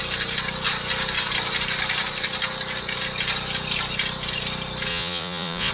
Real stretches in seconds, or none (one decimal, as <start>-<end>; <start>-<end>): 0.0-4.9